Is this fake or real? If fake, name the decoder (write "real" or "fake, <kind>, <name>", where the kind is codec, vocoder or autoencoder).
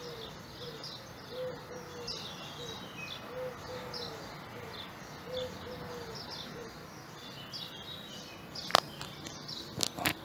real